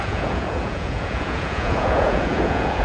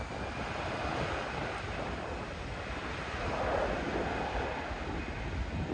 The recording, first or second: second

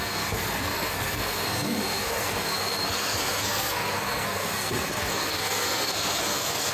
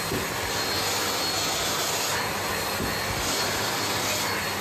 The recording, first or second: second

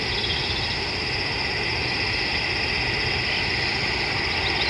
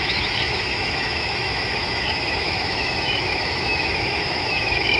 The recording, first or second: first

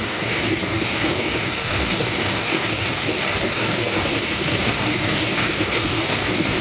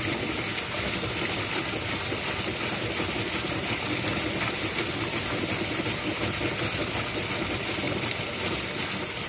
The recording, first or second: second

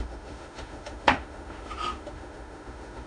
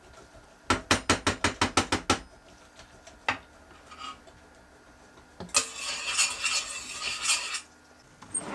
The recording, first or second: second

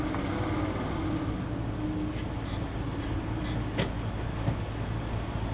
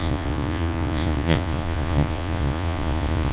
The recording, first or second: first